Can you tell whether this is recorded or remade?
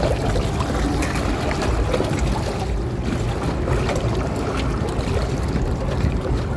recorded